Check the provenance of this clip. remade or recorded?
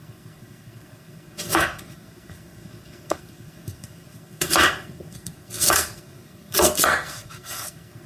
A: remade